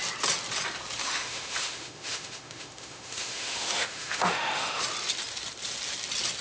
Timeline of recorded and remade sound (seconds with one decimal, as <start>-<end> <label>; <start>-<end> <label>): 0.0-1.0 recorded; 1.0-4.8 remade; 4.8-6.4 recorded